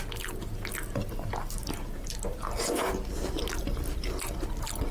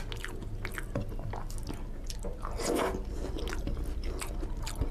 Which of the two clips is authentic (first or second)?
second